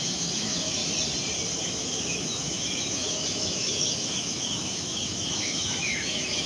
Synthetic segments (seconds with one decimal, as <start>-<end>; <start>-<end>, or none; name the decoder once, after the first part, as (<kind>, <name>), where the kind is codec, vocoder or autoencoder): 0.0-0.8 (autoencoder, DAC-VAE); 1.6-6.5